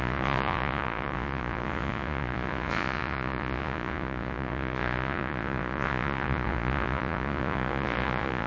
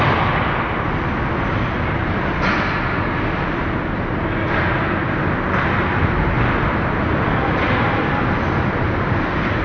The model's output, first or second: first